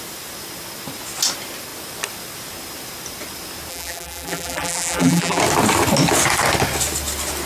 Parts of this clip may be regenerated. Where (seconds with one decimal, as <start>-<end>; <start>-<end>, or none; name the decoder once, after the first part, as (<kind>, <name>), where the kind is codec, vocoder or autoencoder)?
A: 3.7-5.4 (vocoder, BigVGAN v2)